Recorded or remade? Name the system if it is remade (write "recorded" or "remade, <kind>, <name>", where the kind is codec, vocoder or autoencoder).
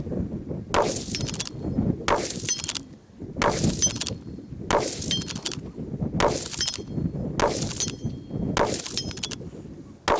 recorded